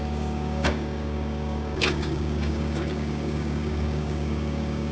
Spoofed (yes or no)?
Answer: yes